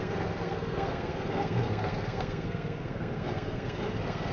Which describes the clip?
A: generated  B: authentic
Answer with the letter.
A